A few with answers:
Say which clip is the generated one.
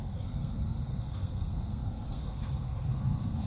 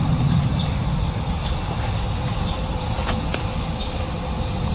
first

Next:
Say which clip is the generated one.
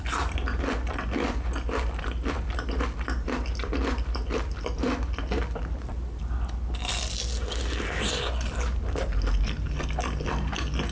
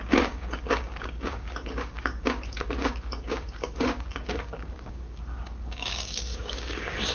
second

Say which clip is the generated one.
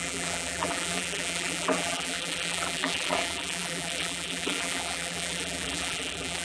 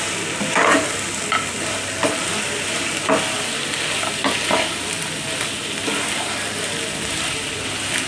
first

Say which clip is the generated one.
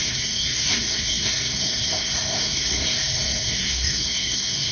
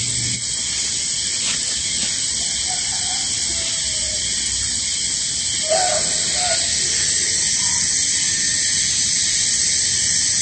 first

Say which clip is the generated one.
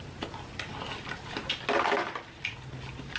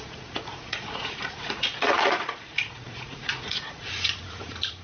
second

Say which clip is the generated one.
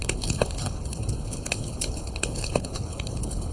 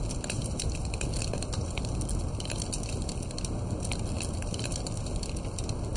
first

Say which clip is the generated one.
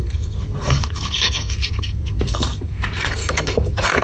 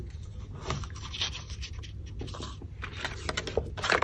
first